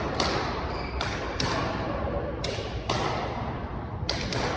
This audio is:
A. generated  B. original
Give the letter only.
A